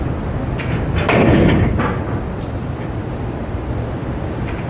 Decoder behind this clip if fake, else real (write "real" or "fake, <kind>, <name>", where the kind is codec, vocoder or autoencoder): real